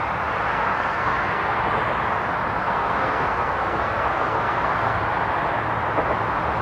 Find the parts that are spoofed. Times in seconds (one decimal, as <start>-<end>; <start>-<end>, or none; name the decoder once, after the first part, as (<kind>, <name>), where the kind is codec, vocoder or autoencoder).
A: 0.5-1.6 (codec, SNAC); 2.6-5.0